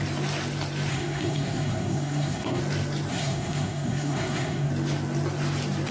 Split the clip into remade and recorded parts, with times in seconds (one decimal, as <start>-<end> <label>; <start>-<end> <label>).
0.0-0.9 recorded; 0.9-2.6 remade; 2.6-3.1 recorded; 3.1-4.7 remade; 4.7-5.9 recorded